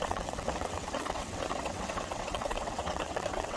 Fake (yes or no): yes